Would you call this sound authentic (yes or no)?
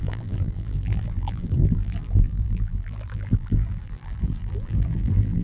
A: no